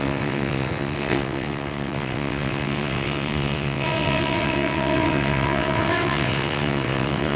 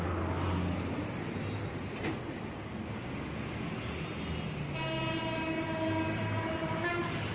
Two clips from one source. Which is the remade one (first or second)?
first